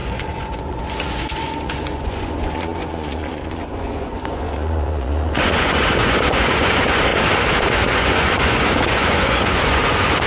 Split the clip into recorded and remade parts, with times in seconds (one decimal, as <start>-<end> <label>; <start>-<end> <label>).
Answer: 0.0-7.1 remade; 7.1-7.6 recorded; 7.6-10.3 remade